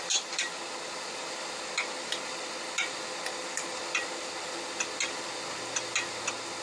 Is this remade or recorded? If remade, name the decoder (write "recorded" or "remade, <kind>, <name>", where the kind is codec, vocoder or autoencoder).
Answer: recorded